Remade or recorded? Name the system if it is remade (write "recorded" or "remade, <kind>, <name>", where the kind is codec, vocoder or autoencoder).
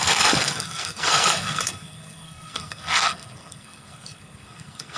remade, codec, SNAC